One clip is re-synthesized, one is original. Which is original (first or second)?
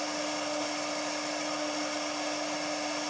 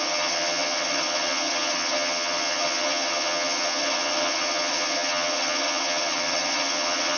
first